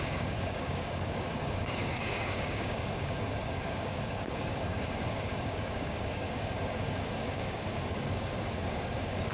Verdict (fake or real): fake